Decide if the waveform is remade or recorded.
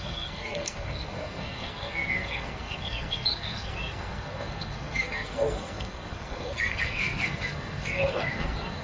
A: remade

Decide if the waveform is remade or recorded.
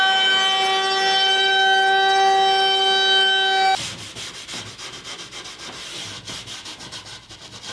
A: recorded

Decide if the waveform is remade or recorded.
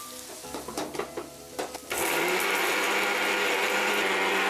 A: recorded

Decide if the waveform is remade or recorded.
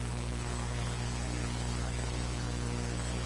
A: remade